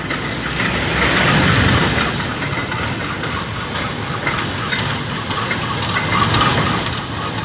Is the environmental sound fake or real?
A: real